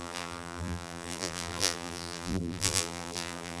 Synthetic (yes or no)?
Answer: yes